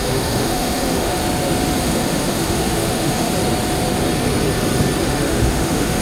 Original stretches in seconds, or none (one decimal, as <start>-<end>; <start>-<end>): 1.2-1.8; 3.3-5.0